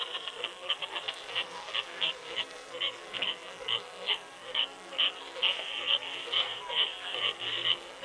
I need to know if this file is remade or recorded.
remade